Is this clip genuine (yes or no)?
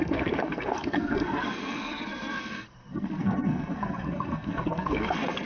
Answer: no